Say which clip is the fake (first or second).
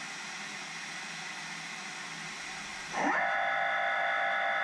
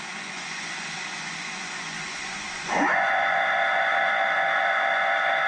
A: second